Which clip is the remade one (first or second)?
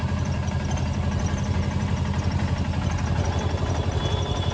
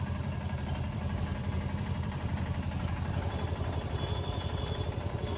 second